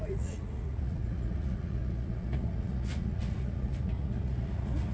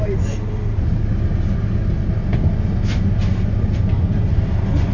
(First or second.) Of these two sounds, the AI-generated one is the first